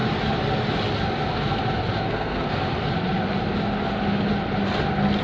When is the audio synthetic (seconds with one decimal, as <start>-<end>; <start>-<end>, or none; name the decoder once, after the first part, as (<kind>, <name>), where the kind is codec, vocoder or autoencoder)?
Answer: 2.0-2.6 (codec, SNAC)